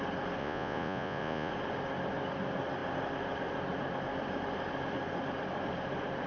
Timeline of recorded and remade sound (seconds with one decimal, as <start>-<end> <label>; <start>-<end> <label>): 0.0-0.4 recorded; 0.4-1.5 remade; 1.5-6.3 recorded